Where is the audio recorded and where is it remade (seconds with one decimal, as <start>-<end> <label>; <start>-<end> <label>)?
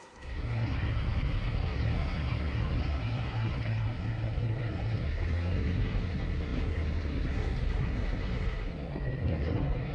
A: 0.0-9.9 remade